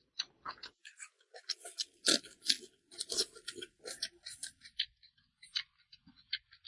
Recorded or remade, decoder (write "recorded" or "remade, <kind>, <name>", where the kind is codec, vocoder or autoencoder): recorded